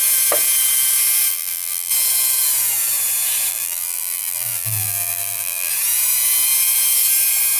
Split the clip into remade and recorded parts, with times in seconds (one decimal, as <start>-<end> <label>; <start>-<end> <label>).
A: 0.0-1.3 recorded; 1.3-1.9 remade; 1.9-3.5 recorded; 3.5-5.7 remade; 5.7-7.6 recorded